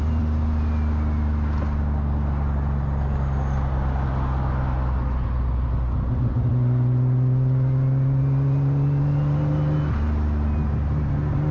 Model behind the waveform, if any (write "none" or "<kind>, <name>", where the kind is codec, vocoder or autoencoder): none